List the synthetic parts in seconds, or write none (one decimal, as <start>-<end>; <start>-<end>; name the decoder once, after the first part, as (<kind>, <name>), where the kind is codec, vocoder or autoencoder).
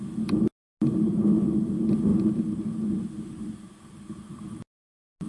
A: none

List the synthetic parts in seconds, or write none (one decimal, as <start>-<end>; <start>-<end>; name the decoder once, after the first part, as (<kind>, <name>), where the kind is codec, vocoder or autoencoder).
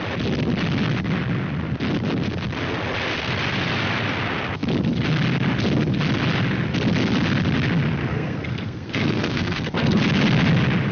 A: 8.0-10.0 (codec, SNAC)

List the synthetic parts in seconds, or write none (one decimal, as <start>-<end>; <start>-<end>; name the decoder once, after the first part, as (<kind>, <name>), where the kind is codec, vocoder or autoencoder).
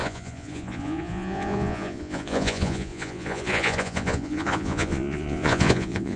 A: 0.0-6.2 (vocoder, Vocos)